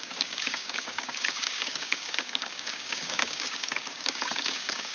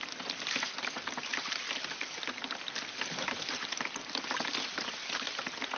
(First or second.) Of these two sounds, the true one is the second